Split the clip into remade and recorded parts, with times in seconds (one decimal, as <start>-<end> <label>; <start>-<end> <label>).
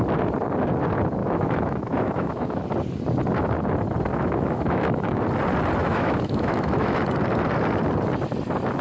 0.0-1.2 recorded; 1.2-2.6 remade; 2.6-4.1 recorded; 4.1-5.2 remade; 5.2-5.8 recorded; 5.8-7.0 remade; 7.0-8.8 recorded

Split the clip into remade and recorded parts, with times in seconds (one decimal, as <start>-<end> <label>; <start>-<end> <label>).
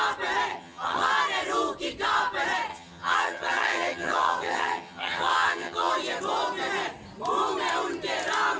0.0-0.5 recorded; 0.5-1.1 remade; 1.1-2.7 recorded; 2.7-5.9 remade; 5.9-8.6 recorded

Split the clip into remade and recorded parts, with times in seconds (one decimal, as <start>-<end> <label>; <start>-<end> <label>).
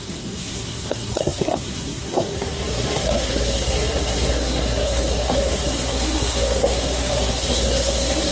0.0-8.3 remade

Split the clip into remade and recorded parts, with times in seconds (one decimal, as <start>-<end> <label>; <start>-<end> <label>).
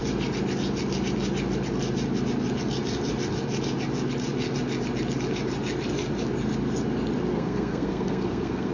0.0-7.3 recorded; 7.3-8.7 remade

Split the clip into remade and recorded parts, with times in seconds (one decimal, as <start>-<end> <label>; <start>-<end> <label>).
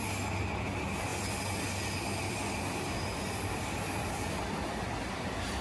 0.0-5.6 recorded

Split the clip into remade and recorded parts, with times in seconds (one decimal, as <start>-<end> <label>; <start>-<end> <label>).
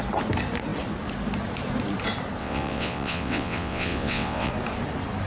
0.0-2.4 recorded; 2.4-4.5 remade; 4.5-5.3 recorded